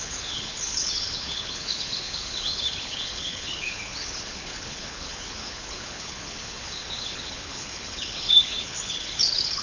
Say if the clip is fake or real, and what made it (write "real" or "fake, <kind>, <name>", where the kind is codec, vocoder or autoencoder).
fake, codec, HILCodec